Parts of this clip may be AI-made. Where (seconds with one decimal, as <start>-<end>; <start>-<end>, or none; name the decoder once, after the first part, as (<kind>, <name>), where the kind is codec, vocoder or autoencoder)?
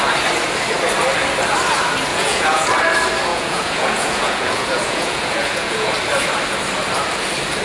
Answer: 2.1-2.7 (vocoder, Vocos); 3.3-5.9